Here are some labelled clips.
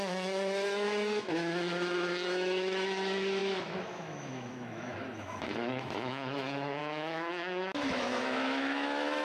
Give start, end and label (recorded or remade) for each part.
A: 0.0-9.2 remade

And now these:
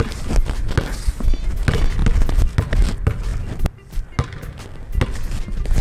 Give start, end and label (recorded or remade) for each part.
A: 0.0-5.8 recorded

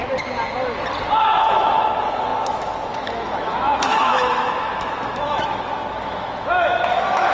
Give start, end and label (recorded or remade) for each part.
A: 0.0-1.4 recorded; 1.4-7.3 remade